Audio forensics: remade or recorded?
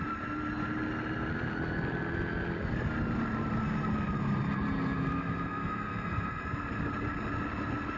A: recorded